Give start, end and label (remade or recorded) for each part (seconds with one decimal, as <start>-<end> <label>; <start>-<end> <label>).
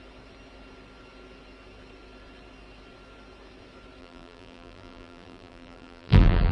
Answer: 0.0-4.0 recorded; 4.0-6.5 remade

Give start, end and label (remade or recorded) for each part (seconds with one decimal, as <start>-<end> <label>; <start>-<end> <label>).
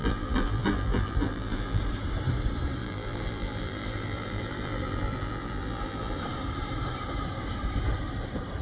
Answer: 0.0-1.8 remade; 1.8-2.8 recorded; 2.8-6.2 remade; 6.2-8.6 recorded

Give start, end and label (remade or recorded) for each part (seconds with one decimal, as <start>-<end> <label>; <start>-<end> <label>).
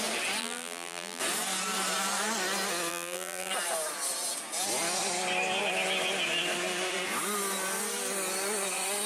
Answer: 0.0-0.4 recorded; 0.4-1.2 remade; 1.2-2.9 recorded; 2.9-3.5 remade; 3.5-9.1 recorded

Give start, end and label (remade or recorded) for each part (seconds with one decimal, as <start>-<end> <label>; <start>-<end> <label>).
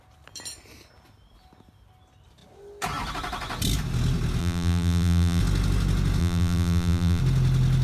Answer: 0.0-4.4 recorded; 4.4-5.4 remade; 5.4-6.2 recorded; 6.2-7.2 remade; 7.2-7.8 recorded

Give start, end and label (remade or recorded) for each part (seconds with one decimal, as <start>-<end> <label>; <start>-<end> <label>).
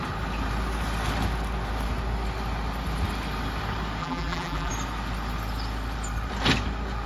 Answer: 0.0-4.0 recorded; 4.0-4.7 remade; 4.7-7.1 recorded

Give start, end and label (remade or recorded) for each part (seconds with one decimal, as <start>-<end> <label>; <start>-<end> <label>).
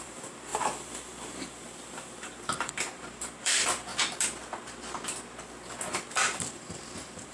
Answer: 0.0-3.9 remade; 3.9-6.4 recorded; 6.4-7.3 remade